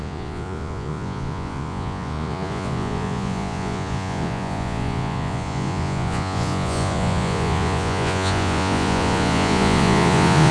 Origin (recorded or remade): remade